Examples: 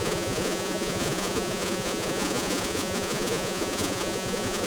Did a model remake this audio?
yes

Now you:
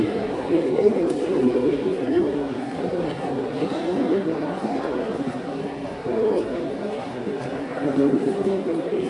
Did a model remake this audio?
yes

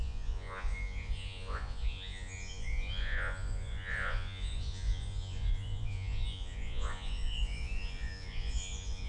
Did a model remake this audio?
yes